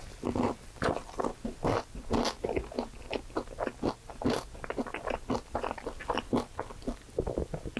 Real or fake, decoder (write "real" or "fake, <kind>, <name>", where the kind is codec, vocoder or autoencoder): real